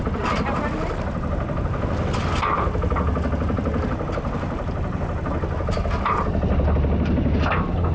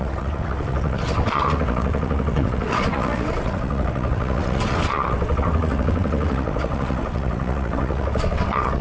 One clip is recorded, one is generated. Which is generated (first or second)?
second